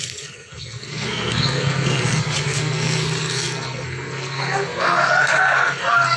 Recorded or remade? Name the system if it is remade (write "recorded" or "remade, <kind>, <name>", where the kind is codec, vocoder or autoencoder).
remade, codec, SNAC